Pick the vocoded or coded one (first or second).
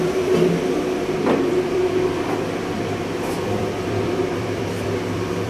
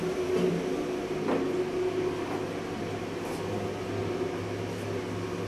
first